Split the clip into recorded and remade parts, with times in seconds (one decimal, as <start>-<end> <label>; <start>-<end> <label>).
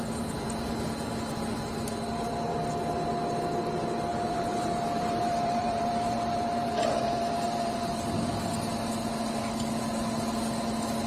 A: 0.0-4.1 recorded; 4.1-7.8 remade; 7.8-11.1 recorded